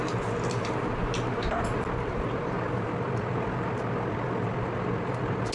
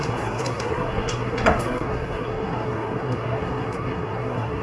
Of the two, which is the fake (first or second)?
second